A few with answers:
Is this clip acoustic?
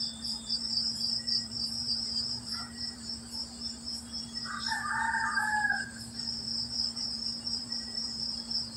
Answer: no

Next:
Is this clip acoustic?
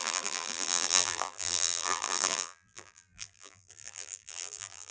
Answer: no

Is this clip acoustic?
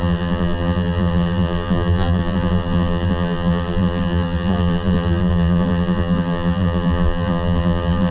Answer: no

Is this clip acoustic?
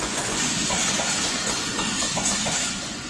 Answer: no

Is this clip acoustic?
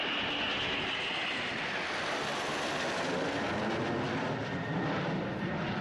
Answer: yes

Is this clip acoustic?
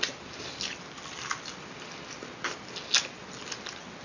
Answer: yes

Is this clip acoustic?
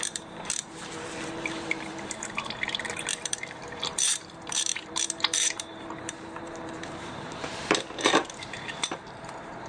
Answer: no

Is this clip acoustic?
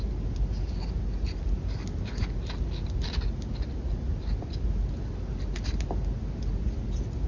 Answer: yes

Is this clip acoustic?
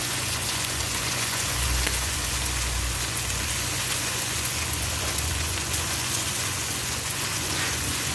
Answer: no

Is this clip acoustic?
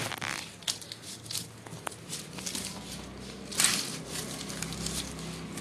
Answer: yes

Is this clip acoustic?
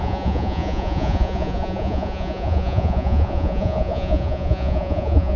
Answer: no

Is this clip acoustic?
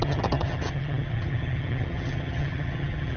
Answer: no